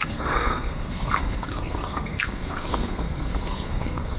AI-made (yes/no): yes